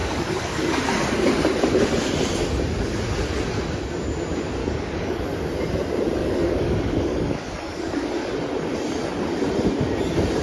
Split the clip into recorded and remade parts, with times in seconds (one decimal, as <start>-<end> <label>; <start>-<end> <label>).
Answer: 0.0-0.8 remade; 0.8-4.6 recorded; 4.6-5.2 remade; 5.2-6.2 recorded; 6.2-8.1 remade; 8.1-10.4 recorded

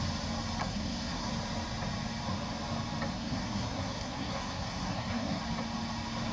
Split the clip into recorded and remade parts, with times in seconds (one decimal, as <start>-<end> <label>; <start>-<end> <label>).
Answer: 0.0-0.6 recorded; 0.6-1.3 remade; 1.3-3.1 recorded; 3.1-5.4 remade; 5.4-6.3 recorded

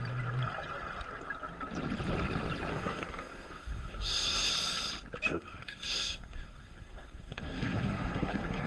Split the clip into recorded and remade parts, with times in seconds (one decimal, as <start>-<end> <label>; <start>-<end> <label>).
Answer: 0.0-2.7 recorded; 2.7-4.5 remade; 4.5-5.3 recorded; 5.3-8.7 remade

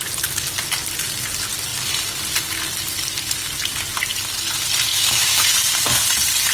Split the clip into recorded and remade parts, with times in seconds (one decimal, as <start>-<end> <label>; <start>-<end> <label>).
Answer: 0.0-4.9 recorded; 4.9-5.5 remade; 5.5-6.5 recorded

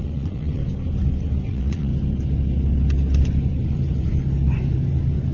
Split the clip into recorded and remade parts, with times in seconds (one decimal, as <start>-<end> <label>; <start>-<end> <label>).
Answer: 0.0-0.6 remade; 0.6-1.5 recorded; 1.5-1.9 remade; 1.9-5.3 recorded

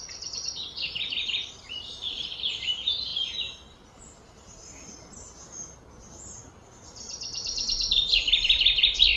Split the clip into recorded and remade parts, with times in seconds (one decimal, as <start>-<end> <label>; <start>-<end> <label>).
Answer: 0.0-9.2 recorded

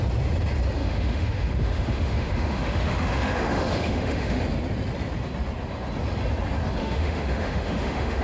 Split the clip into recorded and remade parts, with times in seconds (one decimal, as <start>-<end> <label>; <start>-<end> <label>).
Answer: 0.0-0.8 recorded; 0.8-4.4 remade; 4.4-6.8 recorded; 6.8-8.2 remade

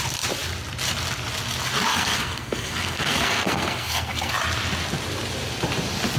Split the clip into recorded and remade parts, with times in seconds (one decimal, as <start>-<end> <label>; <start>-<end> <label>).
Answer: 0.0-1.9 recorded; 1.9-4.3 remade; 4.3-6.2 recorded